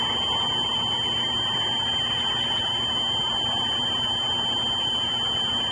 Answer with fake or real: real